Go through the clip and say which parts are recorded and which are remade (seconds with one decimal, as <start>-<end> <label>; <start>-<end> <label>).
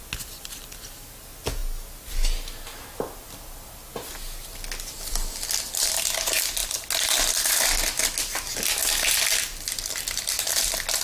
0.0-11.0 recorded